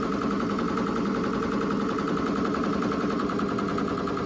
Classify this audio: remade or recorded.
recorded